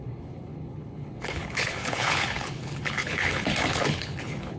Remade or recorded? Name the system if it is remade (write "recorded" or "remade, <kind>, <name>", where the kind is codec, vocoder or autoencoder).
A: remade, codec, HILCodec